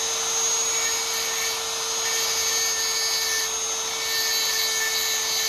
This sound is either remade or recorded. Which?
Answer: recorded